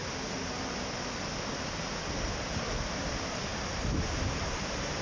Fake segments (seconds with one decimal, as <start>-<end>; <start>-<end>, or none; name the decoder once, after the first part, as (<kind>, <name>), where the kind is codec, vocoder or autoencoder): none